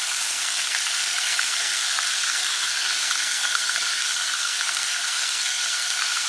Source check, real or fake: fake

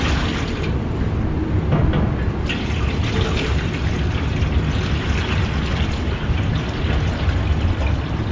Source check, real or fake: real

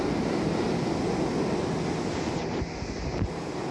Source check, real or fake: real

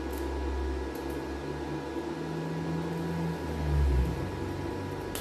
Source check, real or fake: real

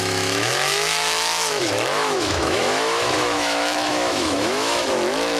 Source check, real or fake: fake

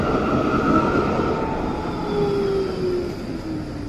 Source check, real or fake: real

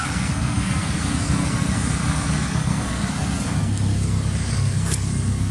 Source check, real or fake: fake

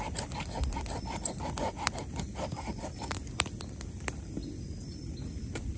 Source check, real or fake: real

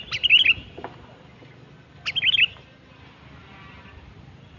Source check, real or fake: real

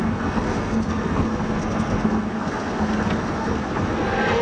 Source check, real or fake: fake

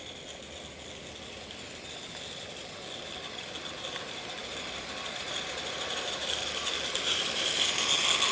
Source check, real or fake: real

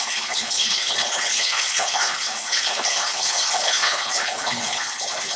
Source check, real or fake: fake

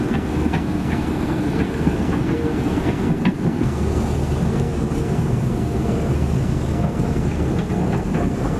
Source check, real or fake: fake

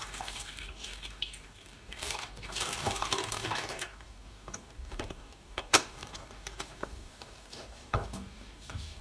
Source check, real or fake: fake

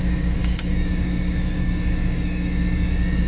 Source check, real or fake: fake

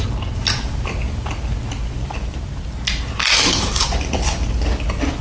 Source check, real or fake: real